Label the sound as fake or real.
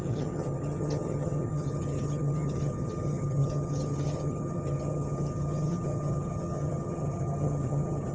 fake